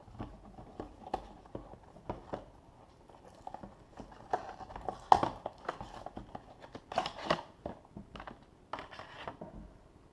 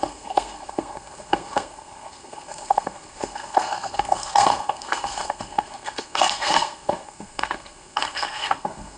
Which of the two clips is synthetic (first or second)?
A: second